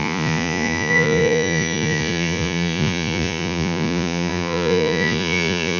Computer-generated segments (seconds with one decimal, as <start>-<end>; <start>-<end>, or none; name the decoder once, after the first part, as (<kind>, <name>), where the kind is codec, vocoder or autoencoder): 0.0-5.8 (vocoder, Vocos)

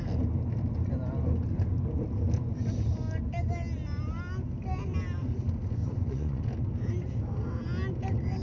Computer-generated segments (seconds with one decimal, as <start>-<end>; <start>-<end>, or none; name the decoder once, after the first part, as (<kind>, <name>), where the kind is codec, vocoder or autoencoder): 5.8-6.4 (vocoder, Vocos)